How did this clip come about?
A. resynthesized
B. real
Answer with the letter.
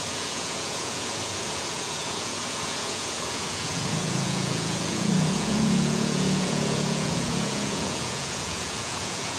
A